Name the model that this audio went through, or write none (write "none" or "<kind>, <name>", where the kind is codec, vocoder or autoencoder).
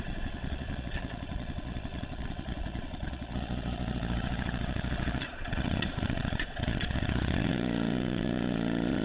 vocoder, Vocos